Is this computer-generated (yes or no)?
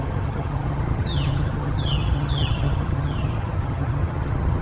yes